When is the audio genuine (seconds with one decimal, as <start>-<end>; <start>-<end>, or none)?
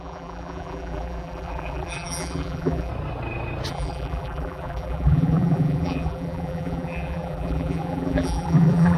2.9-3.7